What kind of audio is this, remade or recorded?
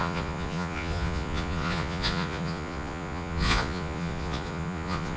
remade